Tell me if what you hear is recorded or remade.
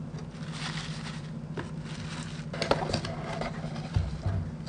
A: recorded